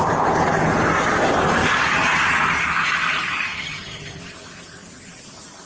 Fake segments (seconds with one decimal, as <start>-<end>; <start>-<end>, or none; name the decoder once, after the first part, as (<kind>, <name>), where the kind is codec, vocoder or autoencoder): 3.5-4.2 (vocoder, HiFi-GAN)

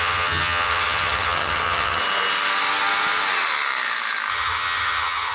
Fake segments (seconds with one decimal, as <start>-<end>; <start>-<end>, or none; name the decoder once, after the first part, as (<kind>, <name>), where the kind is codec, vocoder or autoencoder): 0.0-2.0 (vocoder, HiFi-GAN); 4.3-5.3

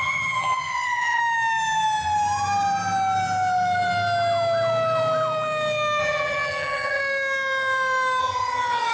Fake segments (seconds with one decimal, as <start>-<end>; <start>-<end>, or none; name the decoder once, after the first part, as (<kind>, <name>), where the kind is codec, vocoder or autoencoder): 0.0-1.2 (vocoder, HiFi-GAN); 6.0-7.0; 8.2-8.9

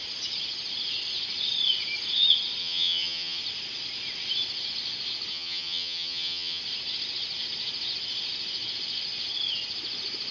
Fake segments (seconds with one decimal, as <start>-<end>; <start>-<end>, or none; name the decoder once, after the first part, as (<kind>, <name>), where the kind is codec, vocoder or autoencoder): 2.6-3.4 (vocoder, HiFi-GAN); 5.3-6.6

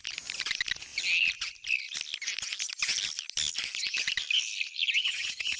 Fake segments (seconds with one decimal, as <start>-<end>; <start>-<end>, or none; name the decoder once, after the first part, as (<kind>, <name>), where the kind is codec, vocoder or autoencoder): 5.0-5.6 (vocoder, HiFi-GAN)